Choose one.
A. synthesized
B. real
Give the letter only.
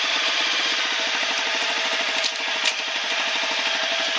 B